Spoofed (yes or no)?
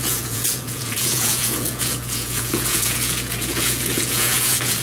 yes